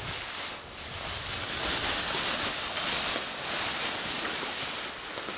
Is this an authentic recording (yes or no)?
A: yes